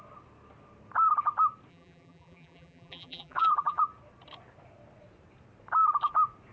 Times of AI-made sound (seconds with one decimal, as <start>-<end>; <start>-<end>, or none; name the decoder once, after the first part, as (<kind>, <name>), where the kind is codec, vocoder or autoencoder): 1.7-3.8 (vocoder, BigVGAN v2)